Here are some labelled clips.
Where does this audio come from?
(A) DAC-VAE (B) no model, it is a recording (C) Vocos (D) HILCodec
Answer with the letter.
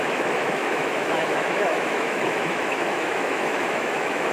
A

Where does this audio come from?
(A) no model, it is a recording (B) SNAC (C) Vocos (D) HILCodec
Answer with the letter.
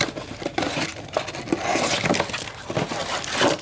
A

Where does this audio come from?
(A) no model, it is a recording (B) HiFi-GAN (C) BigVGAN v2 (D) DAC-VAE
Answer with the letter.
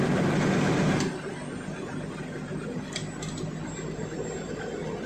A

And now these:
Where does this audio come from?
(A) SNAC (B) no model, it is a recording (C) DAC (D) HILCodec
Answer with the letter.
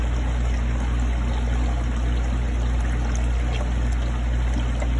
B